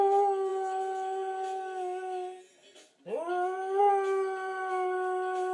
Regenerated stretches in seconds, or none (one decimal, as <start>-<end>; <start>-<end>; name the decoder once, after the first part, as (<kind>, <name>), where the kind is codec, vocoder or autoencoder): none